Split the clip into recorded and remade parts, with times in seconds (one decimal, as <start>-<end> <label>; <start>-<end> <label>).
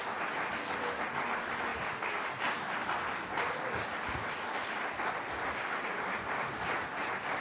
0.0-7.4 recorded